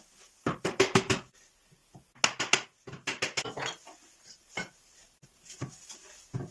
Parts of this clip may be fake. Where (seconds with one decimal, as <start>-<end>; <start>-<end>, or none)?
none